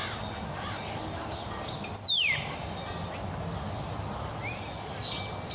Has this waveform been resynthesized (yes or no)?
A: no